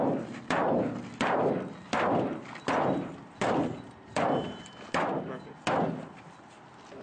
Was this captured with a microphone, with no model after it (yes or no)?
yes